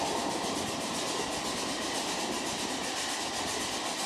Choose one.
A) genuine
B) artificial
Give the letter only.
A